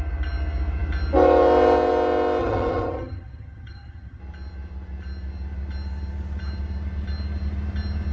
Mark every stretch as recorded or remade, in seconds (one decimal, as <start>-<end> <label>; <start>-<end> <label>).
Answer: 0.0-2.4 recorded; 2.4-4.2 remade; 4.2-8.1 recorded